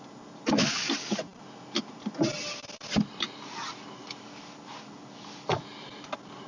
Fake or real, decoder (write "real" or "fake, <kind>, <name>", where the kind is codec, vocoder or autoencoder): real